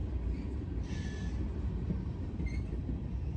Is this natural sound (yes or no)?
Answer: yes